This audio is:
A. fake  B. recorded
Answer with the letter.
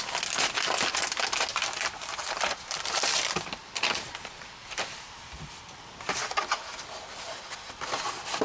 B